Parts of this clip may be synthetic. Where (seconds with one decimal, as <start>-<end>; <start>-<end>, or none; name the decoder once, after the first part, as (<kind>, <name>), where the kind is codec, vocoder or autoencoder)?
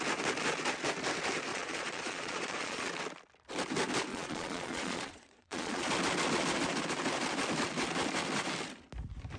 1.5-2.9 (vocoder, Vocos); 4.1-5.9